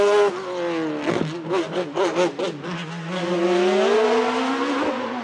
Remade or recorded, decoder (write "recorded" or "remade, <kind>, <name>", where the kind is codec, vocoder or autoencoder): recorded